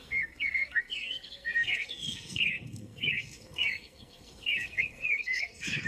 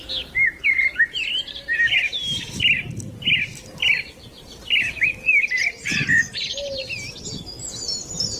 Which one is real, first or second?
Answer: second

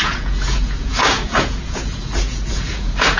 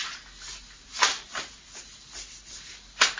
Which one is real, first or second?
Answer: second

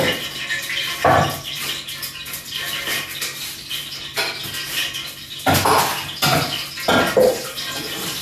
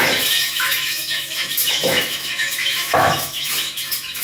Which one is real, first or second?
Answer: first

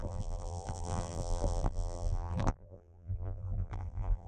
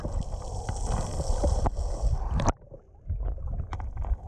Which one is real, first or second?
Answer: second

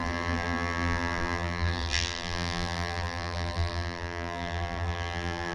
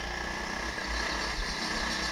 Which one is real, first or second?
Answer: second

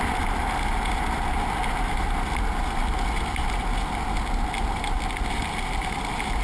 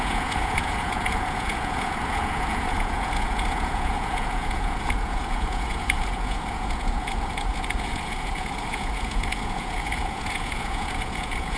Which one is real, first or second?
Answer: first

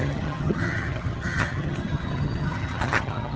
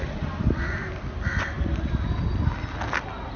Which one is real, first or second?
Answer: second